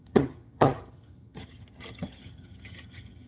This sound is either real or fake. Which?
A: fake